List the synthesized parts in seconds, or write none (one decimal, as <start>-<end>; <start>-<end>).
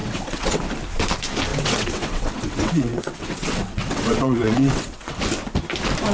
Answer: 0.0-0.6; 1.5-5.2